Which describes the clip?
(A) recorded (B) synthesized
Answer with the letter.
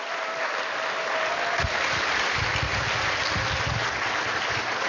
A